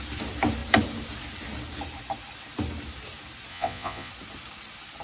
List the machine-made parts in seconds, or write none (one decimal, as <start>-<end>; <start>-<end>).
3.5-4.1